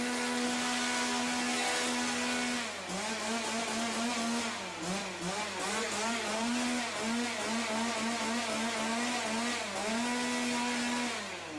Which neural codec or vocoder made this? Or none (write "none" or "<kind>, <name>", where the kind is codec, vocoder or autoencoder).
none